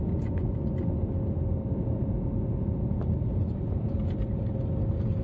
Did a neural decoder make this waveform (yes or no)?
no